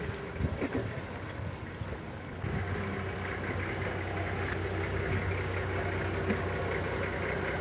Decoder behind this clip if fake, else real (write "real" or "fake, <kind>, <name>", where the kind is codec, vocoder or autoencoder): real